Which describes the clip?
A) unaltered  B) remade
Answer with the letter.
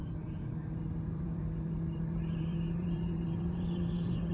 B